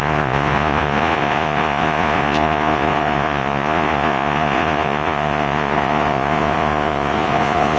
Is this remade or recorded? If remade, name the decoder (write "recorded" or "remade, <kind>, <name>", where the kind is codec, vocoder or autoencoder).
remade, vocoder, Vocos